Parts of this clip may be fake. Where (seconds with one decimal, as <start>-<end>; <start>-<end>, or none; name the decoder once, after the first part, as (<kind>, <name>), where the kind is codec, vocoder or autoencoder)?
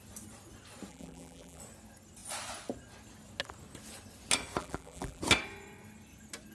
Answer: 0.9-1.6 (vocoder, BigVGAN v2); 4.6-5.2